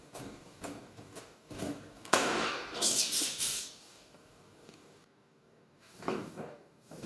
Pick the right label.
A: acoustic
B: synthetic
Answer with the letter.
B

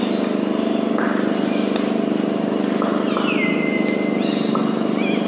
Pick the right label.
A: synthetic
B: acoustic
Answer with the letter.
B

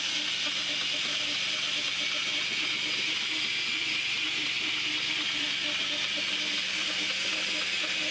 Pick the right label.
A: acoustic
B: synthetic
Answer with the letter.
A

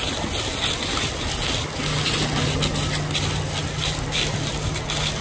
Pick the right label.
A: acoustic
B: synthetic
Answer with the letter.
A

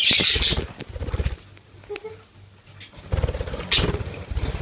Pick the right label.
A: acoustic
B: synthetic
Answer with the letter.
A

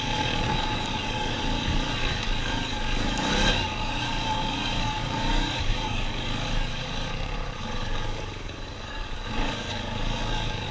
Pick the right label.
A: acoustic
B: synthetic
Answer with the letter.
B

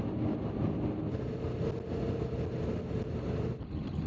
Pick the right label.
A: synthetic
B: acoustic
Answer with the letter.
B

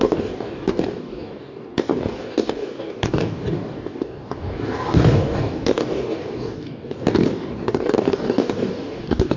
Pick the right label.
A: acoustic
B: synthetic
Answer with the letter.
B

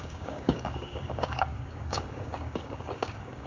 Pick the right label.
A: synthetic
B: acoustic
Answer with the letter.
A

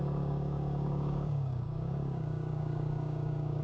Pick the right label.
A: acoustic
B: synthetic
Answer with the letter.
B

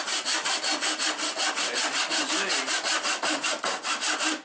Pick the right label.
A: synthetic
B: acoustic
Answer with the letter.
B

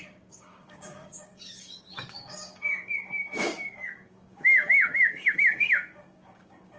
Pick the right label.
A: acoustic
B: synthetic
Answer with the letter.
B